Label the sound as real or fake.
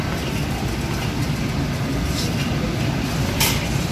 real